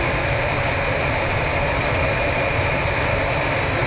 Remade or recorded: remade